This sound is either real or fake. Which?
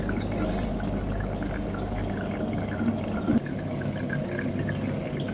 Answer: real